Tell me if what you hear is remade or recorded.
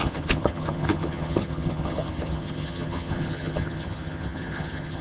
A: remade